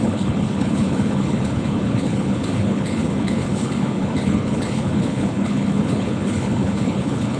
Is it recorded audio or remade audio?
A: remade